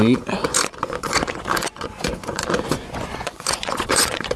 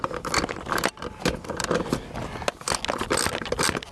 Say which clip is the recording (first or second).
second